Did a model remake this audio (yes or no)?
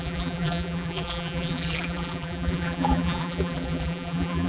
yes